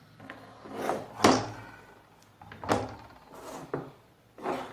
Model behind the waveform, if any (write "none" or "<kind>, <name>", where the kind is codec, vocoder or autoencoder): none